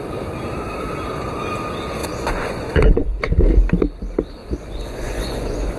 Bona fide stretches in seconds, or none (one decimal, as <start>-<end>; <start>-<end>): 0.0-2.0; 3.2-4.4